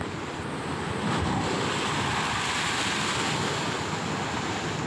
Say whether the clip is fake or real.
real